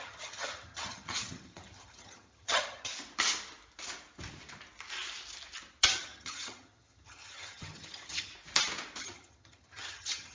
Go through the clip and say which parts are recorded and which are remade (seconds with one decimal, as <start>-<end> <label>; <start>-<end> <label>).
0.0-2.9 remade; 2.9-5.8 recorded; 5.8-8.3 remade; 8.3-9.0 recorded; 9.0-10.3 remade